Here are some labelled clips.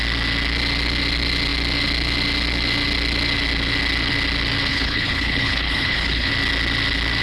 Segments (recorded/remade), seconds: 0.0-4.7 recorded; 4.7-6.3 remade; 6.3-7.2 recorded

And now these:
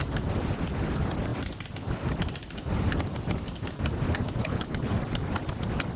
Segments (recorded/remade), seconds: 0.0-4.4 recorded; 4.4-4.9 remade; 4.9-6.0 recorded

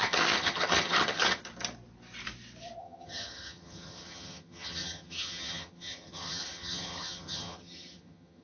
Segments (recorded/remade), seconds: 0.0-1.4 remade; 1.4-2.8 recorded; 2.8-8.4 remade

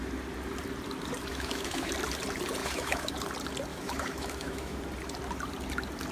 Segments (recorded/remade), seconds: 0.0-1.3 recorded; 1.3-1.9 remade; 1.9-2.6 recorded; 2.6-3.1 remade; 3.1-3.7 recorded; 3.7-4.8 remade; 4.8-6.1 recorded

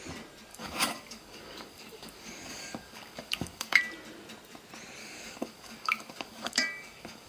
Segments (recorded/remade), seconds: 0.0-0.5 recorded; 0.5-3.8 remade; 3.8-5.0 recorded; 5.0-7.3 remade

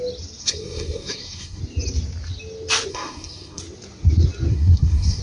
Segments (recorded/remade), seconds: 0.0-0.4 recorded; 0.4-1.6 remade; 1.6-2.9 recorded; 2.9-3.6 remade; 3.6-4.5 recorded; 4.5-5.2 remade

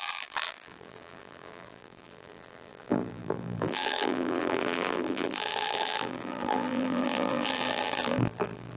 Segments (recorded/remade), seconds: 0.0-8.8 remade

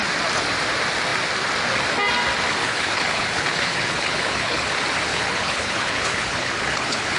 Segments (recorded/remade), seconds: 0.0-2.6 recorded; 2.6-4.6 remade; 4.6-5.1 recorded; 5.1-7.2 remade